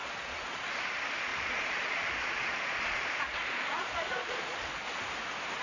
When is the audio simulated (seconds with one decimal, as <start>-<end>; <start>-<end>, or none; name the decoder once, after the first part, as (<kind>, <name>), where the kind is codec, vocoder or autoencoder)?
0.0-0.7 (vocoder, Vocos); 1.3-4.7